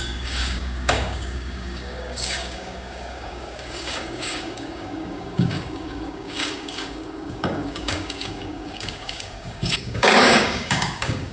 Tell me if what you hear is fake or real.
fake